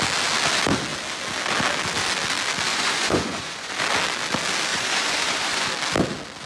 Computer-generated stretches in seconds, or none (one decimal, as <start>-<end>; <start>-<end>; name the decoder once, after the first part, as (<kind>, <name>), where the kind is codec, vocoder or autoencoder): 2.7-3.7 (vocoder, Vocos); 4.7-5.7